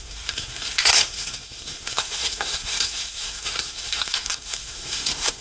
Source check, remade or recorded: remade